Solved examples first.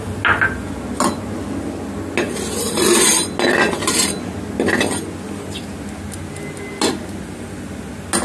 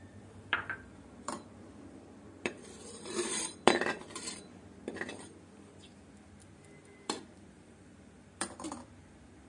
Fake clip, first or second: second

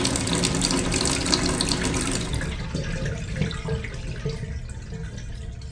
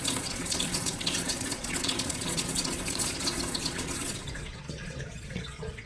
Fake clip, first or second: second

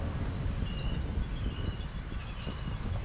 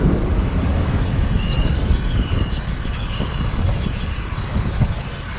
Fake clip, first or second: second